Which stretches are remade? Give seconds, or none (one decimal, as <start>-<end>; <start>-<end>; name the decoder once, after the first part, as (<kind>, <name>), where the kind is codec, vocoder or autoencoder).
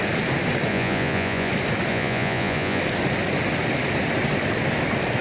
0.7-1.5 (vocoder, Vocos); 1.9-2.8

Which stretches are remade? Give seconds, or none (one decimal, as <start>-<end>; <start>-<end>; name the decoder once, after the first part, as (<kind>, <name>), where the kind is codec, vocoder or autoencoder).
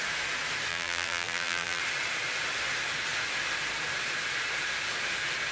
0.7-1.8 (vocoder, BigVGAN v2)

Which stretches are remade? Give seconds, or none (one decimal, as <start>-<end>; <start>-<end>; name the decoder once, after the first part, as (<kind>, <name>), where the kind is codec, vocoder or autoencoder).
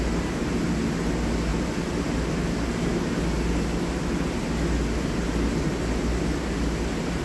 none